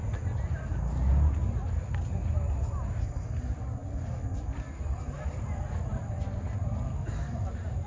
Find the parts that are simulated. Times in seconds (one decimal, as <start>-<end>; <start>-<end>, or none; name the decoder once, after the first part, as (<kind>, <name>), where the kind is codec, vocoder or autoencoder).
none

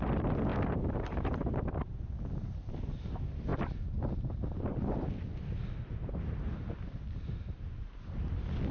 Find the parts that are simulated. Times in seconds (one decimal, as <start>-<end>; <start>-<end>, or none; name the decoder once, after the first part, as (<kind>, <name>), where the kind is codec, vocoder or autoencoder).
none

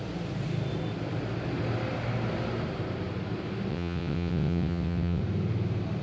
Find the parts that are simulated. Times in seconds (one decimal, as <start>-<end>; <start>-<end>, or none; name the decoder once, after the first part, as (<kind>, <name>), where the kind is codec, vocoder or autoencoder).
3.7-5.2 (vocoder, WaveNeXt)

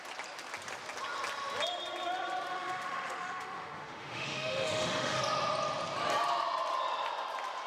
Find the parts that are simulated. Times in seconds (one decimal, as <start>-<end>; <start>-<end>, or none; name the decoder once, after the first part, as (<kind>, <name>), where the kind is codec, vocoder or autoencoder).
2.5-5.2 (autoencoder, DAC-VAE)

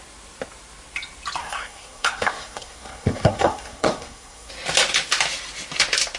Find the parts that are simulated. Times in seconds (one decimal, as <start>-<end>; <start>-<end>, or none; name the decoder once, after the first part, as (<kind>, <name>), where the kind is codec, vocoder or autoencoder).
1.4-4.5 (codec, SNAC)